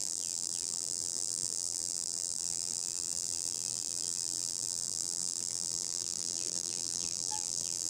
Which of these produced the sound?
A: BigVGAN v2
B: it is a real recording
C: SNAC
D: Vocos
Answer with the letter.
A